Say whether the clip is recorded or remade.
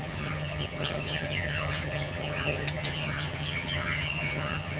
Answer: remade